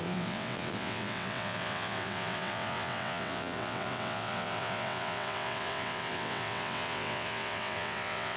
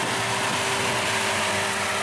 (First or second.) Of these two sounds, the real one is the second